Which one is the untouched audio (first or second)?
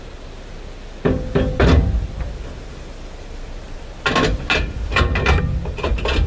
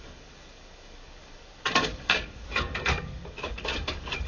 first